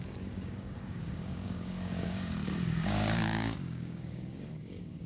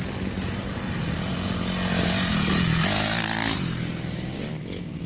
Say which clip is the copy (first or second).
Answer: first